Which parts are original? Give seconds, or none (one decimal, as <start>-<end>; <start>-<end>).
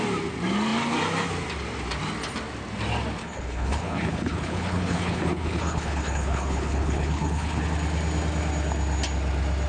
0.0-3.2; 7.6-9.7